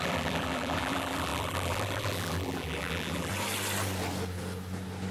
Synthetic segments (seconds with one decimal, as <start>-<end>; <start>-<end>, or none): 0.0-3.3